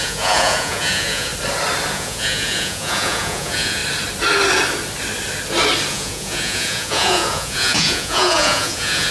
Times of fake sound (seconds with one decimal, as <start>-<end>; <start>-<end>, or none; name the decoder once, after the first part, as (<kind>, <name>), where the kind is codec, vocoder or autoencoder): 0.0-1.3 (vocoder, Vocos); 1.9-3.8; 5.9-9.1